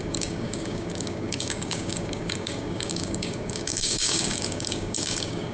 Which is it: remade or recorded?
remade